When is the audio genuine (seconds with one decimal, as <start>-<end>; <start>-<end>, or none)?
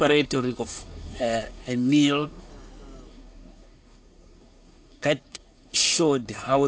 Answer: 2.5-3.1